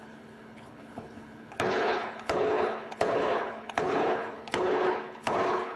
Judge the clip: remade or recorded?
remade